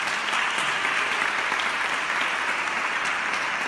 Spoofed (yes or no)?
no